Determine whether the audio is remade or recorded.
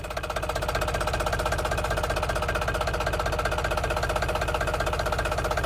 recorded